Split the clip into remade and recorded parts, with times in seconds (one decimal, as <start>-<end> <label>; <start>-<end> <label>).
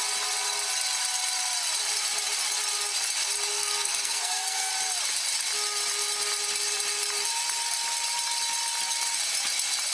0.0-3.5 recorded; 3.5-4.7 remade; 4.7-9.9 recorded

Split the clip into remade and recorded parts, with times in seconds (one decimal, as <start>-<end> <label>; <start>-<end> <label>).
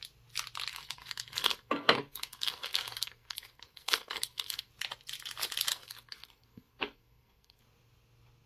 0.0-0.7 recorded; 0.7-4.7 remade; 4.7-5.7 recorded; 5.7-7.6 remade; 7.6-8.5 recorded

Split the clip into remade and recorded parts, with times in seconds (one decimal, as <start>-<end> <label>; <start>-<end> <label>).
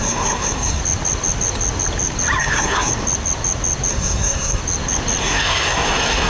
0.0-0.8 remade; 0.8-2.4 recorded; 2.4-2.9 remade; 2.9-3.9 recorded; 3.9-4.6 remade; 4.6-5.2 recorded; 5.2-6.3 remade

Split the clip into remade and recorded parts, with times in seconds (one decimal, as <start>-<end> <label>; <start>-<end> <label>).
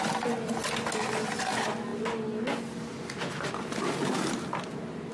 0.0-5.1 recorded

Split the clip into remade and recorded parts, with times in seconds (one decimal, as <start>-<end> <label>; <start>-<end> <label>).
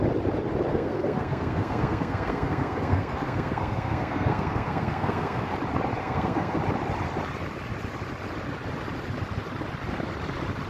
0.0-0.7 recorded; 0.7-5.5 remade; 5.5-6.0 recorded; 6.0-6.6 remade; 6.6-10.7 recorded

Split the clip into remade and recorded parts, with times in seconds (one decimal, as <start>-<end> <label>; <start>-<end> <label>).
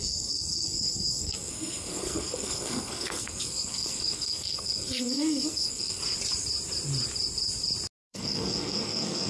0.0-6.0 remade; 6.0-8.1 recorded; 8.1-9.3 remade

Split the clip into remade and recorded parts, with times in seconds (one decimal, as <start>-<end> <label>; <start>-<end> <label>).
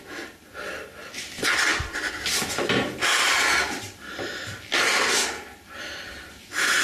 0.0-6.8 recorded